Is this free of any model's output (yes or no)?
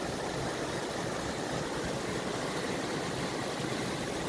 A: yes